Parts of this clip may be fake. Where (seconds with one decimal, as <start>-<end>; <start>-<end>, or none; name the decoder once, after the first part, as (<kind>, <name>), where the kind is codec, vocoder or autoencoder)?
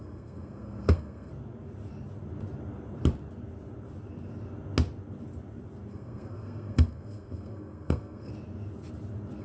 0.0-1.3 (codec, SNAC); 5.9-8.3